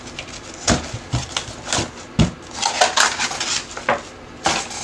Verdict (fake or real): real